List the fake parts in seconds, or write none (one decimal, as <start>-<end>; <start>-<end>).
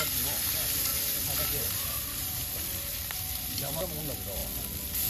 0.9-4.0